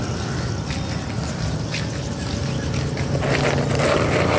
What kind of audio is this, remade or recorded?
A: recorded